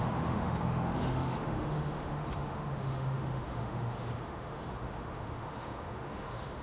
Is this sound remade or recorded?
remade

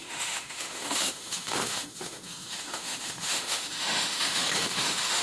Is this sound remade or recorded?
remade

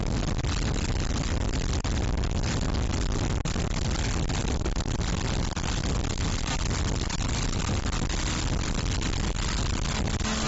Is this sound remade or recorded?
recorded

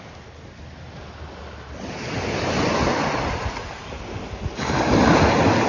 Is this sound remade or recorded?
recorded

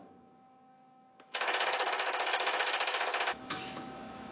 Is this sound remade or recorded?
remade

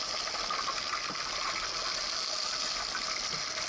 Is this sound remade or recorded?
recorded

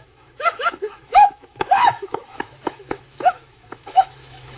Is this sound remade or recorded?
remade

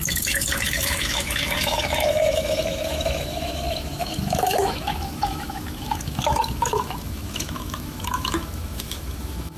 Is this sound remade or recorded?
remade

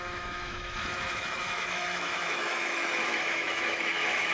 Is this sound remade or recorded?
remade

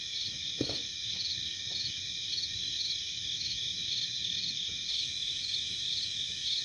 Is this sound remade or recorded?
remade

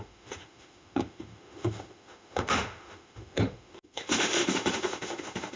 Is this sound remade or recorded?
remade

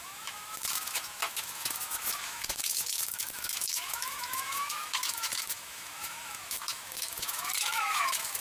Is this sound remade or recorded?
remade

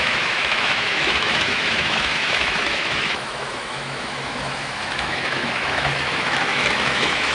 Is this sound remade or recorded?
remade